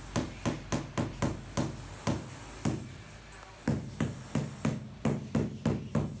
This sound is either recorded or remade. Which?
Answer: recorded